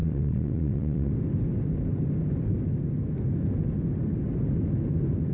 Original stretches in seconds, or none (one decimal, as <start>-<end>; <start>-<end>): 1.1-5.3

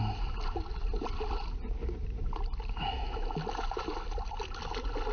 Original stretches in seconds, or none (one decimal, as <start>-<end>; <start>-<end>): 0.0-5.1

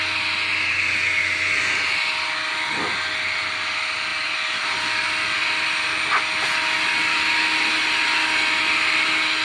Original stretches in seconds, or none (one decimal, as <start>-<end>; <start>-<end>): 0.0-9.4

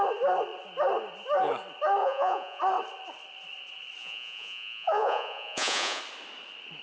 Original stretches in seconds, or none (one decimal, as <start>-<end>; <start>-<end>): 0.0-2.0; 2.6-4.0; 6.0-6.8

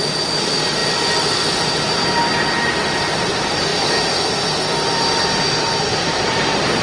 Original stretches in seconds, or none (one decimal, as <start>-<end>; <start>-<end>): 0.0-6.8